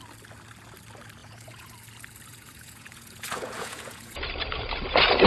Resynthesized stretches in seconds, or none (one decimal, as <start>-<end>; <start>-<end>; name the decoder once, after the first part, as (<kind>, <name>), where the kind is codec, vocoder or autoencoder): 1.2-1.7 (vocoder, Vocos); 2.3-4.2